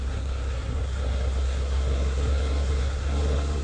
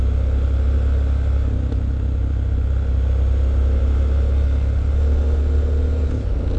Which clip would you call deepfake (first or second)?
first